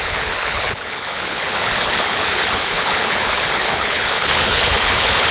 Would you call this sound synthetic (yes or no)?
yes